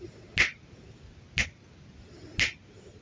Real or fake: real